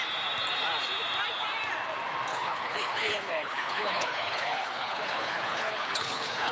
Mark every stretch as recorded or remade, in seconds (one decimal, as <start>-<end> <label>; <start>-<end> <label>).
0.0-2.3 recorded; 2.3-6.5 remade